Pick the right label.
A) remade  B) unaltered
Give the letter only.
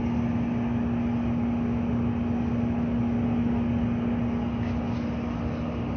B